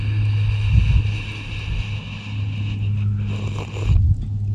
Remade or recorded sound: recorded